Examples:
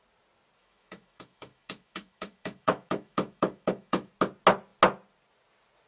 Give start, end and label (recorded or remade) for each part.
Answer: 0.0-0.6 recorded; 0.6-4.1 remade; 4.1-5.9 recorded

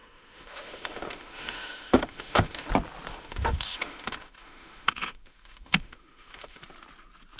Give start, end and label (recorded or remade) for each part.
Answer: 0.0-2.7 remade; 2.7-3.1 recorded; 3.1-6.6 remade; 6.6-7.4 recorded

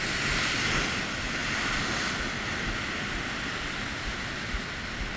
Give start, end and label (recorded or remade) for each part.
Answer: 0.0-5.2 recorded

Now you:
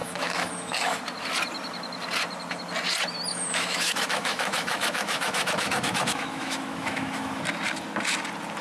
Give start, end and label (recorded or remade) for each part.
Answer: 0.0-1.0 remade; 1.0-3.3 recorded; 3.3-7.4 remade; 7.4-8.6 recorded